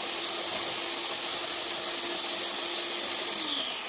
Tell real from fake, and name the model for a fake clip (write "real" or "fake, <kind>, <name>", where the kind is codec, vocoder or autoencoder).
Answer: real